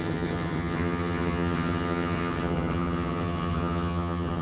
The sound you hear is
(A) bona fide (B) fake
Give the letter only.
B